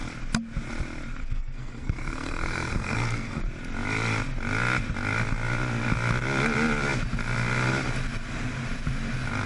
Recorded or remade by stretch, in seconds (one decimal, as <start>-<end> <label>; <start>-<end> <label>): 0.0-1.2 recorded; 1.2-3.4 remade; 3.4-9.5 recorded